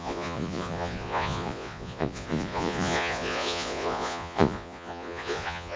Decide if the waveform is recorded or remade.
remade